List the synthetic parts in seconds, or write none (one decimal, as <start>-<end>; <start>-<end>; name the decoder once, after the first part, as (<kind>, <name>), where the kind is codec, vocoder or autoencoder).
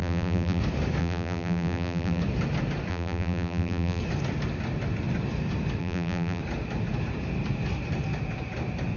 0.0-0.6 (vocoder, BigVGAN v2); 1.0-2.2; 2.9-4.0; 5.8-6.4